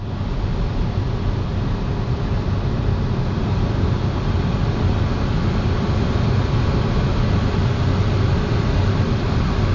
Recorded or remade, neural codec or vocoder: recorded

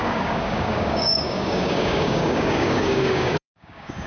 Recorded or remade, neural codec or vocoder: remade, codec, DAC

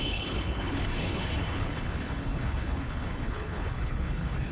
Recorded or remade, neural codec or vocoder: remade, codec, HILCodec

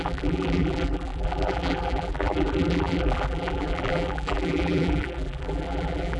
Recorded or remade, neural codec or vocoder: remade, vocoder, BigVGAN v2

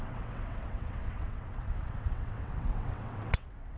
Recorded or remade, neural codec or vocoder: remade, vocoder, WaveNeXt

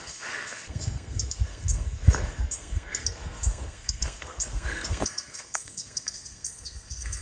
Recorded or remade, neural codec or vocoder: remade, codec, SNAC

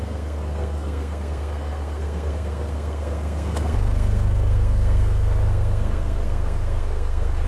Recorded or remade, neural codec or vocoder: remade, codec, SNAC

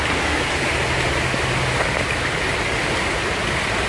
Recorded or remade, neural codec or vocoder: recorded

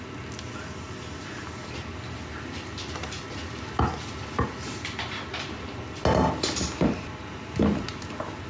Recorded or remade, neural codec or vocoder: recorded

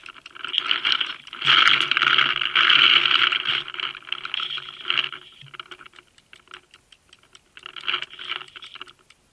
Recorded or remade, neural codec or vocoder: recorded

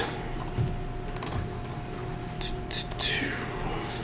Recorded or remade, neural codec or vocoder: recorded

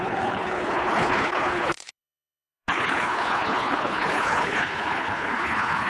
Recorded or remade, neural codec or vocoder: remade, codec, HILCodec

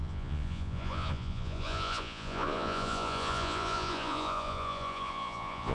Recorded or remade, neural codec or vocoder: remade, vocoder, Vocos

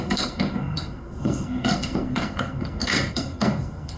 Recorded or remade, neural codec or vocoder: remade, codec, SNAC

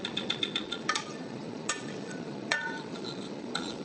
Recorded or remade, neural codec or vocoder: remade, vocoder, Vocos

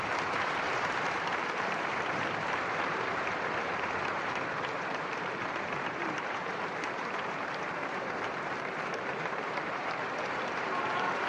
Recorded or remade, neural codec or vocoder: remade, vocoder, BigVGAN v2